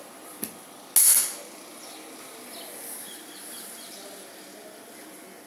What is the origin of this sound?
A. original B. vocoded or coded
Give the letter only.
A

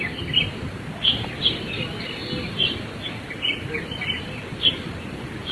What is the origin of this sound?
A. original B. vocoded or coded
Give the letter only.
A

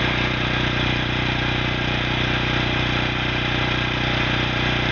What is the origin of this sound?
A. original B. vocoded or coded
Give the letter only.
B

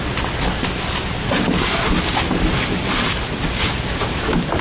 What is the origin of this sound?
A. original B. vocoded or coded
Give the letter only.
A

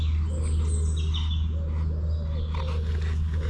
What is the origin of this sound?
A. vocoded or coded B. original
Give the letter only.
B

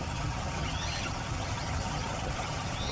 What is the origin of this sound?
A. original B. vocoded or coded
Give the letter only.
B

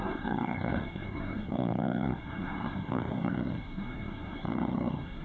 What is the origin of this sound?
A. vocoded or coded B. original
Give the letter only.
A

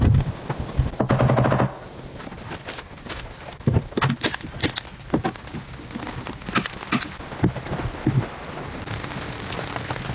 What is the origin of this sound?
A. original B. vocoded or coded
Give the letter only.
A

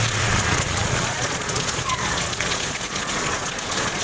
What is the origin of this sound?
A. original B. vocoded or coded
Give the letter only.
B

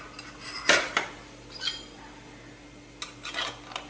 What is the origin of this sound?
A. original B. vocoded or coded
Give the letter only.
A